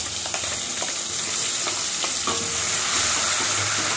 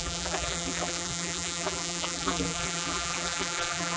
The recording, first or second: first